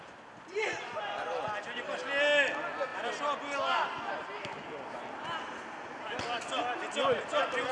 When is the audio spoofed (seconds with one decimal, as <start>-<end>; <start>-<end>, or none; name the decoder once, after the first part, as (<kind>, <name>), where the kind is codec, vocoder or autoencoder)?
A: none